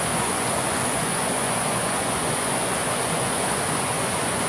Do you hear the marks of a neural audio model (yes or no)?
yes